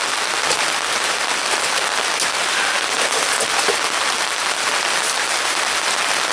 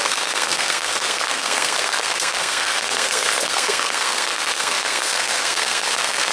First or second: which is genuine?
first